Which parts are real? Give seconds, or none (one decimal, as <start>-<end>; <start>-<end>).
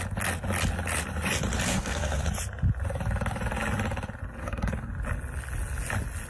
0.0-1.7; 2.2-4.4; 4.9-6.3